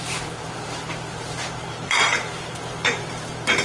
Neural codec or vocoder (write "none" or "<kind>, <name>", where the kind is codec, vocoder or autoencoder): vocoder, BigVGAN v2